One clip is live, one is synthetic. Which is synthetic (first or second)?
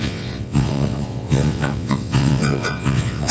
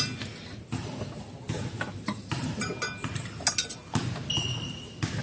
first